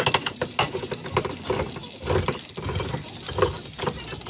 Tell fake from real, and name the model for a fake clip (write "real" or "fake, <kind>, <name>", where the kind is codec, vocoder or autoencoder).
real